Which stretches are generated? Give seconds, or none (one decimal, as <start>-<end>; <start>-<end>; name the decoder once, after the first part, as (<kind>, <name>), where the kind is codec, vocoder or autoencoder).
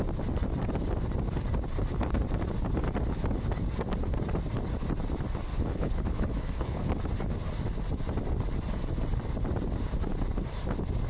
5.5-6.9 (codec, HILCodec)